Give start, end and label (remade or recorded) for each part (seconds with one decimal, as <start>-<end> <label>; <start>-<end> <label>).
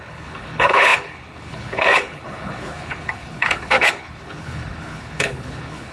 0.0-5.9 remade